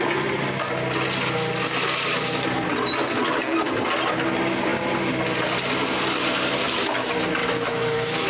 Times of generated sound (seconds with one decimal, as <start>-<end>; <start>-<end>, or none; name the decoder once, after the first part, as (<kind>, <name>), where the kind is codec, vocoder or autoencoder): 7.4-8.3 (autoencoder, DAC-VAE)